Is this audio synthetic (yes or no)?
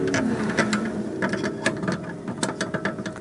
no